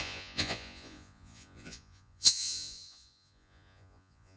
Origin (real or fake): fake